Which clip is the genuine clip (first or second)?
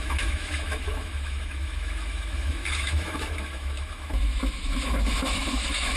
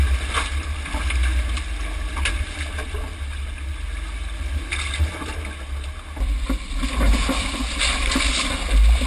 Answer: second